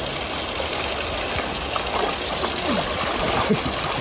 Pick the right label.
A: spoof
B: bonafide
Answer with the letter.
B